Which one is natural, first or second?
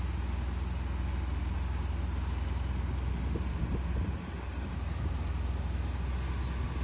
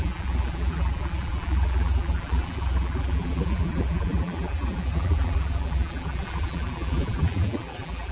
first